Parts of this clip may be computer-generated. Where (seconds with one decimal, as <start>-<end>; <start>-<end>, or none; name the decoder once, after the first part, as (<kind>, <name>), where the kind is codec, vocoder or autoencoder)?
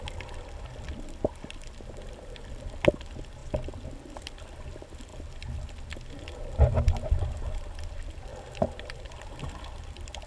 none